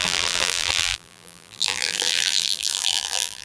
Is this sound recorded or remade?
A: remade